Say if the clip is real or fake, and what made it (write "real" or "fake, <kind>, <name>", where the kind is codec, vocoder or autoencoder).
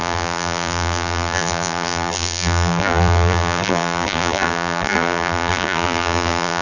fake, vocoder, BigVGAN v2